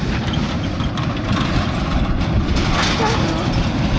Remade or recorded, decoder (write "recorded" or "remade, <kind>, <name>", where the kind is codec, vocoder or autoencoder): recorded